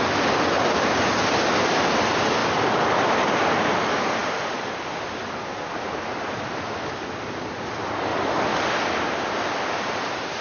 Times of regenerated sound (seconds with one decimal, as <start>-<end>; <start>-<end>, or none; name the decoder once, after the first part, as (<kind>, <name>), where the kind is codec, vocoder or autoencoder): none